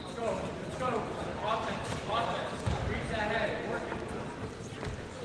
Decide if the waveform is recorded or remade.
remade